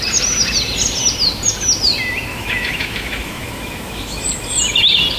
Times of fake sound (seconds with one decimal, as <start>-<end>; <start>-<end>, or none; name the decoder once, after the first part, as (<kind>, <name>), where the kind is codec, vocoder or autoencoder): 2.3-4.2 (autoencoder, DAC-VAE)